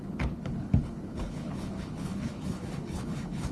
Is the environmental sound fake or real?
fake